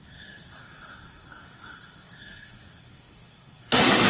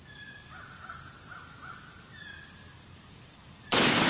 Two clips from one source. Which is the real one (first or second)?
second